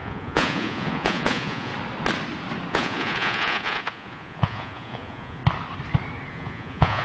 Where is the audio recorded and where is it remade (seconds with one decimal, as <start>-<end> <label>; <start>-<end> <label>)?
0.0-1.7 remade; 1.7-2.7 recorded; 2.7-5.4 remade; 5.4-6.3 recorded; 6.3-7.0 remade